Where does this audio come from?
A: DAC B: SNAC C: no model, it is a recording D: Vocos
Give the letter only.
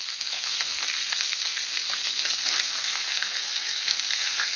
B